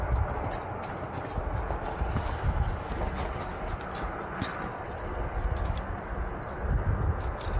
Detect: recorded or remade recorded